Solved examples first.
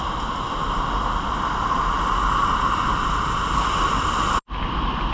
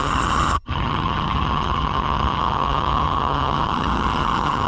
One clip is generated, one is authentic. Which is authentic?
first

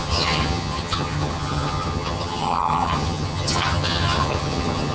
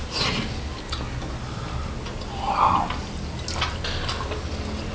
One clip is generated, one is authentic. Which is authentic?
second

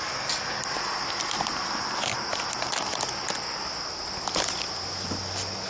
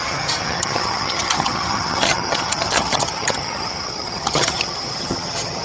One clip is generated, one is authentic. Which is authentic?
first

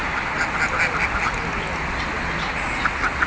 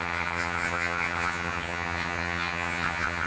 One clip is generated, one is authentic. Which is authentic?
first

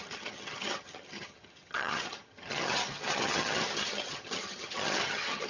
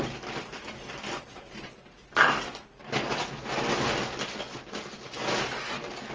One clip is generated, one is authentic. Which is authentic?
second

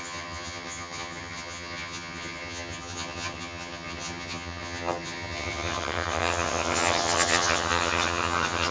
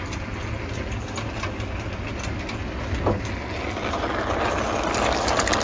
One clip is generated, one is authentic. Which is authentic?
second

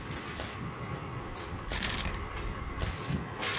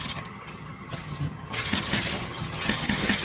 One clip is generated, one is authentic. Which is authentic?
first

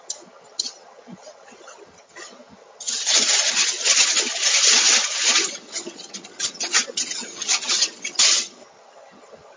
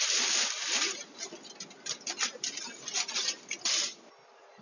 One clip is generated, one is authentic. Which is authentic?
second